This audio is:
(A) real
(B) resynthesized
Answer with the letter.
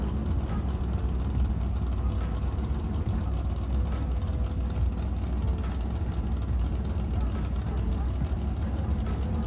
A